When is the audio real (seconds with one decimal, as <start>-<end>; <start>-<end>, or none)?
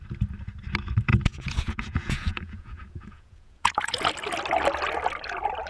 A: 0.0-1.1; 4.1-5.7